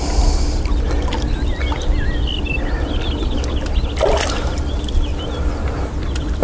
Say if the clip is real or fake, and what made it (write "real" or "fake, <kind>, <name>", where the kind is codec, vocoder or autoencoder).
real